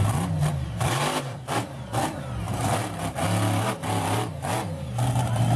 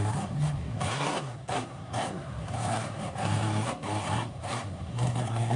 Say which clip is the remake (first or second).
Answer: second